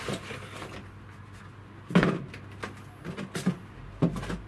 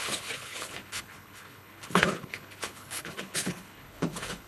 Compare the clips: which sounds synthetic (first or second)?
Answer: second